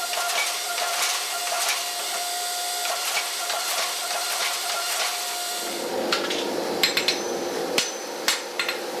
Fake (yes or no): yes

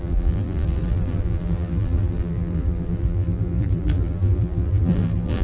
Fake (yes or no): yes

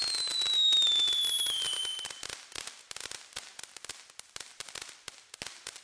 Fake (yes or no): no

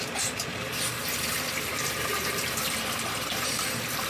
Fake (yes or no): yes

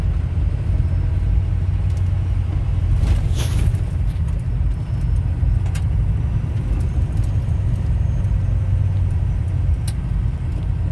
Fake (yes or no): no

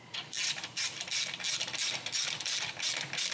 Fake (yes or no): no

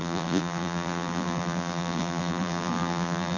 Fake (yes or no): yes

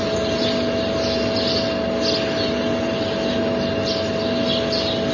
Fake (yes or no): no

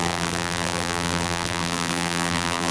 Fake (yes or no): yes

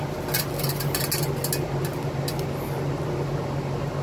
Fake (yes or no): no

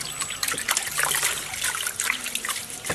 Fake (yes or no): no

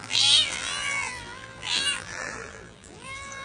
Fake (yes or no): yes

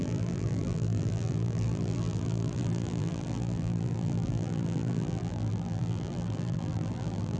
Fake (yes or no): yes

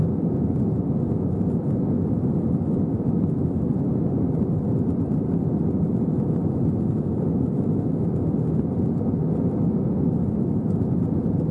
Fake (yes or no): no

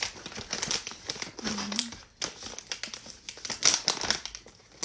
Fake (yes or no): no